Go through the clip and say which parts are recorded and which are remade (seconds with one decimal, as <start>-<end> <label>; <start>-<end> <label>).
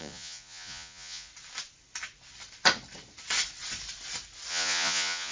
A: 0.0-1.3 remade; 1.3-4.5 recorded; 4.5-5.3 remade